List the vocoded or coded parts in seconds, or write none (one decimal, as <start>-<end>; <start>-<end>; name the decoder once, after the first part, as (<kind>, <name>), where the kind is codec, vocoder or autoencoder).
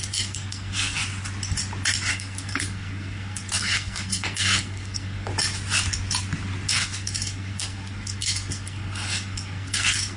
0.0-1.0 (codec, SNAC); 2.1-5.3; 6.7-10.2